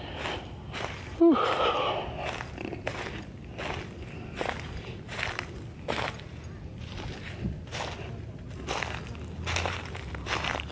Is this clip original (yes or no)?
yes